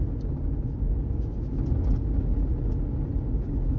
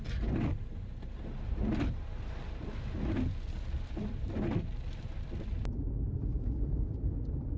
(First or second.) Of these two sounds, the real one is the first